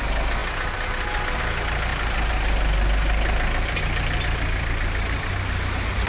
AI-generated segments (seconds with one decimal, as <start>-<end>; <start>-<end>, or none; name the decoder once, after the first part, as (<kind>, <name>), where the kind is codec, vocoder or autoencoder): none